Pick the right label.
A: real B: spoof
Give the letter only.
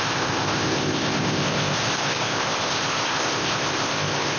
B